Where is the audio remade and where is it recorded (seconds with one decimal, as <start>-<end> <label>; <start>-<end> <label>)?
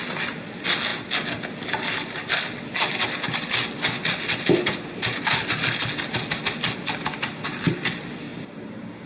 0.0-9.1 recorded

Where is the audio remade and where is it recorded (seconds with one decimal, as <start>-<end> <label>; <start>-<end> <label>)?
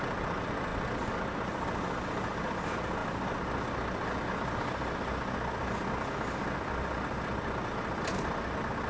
0.0-8.9 recorded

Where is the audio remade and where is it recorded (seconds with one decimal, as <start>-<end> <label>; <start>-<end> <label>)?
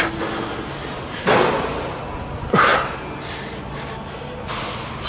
0.0-0.8 recorded; 0.8-2.2 remade; 2.2-5.1 recorded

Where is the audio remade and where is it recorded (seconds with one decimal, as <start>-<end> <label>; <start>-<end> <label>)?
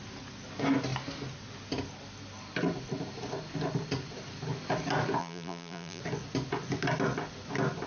0.0-5.2 recorded; 5.2-6.0 remade; 6.0-7.9 recorded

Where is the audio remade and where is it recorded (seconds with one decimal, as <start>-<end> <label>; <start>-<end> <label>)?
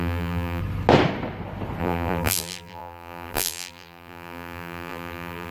0.0-0.6 remade; 0.6-1.8 recorded; 1.8-5.5 remade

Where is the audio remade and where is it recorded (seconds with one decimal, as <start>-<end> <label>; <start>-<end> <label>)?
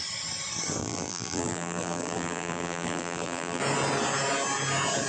0.0-0.8 recorded; 0.8-3.6 remade; 3.6-5.1 recorded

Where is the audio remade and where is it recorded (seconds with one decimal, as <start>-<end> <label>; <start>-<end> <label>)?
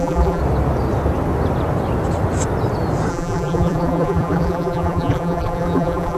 0.0-0.4 remade; 0.4-3.1 recorded; 3.1-6.2 remade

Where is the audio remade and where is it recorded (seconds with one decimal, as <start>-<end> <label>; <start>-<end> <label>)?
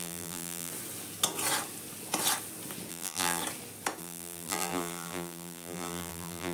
0.0-0.7 remade; 0.7-2.9 recorded; 2.9-3.4 remade; 3.4-4.0 recorded; 4.0-6.5 remade